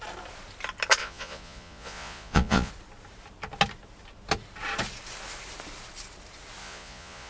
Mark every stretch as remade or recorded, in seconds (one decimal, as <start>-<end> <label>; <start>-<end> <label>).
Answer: 0.0-1.0 recorded; 1.0-2.7 remade; 2.7-6.6 recorded; 6.6-7.3 remade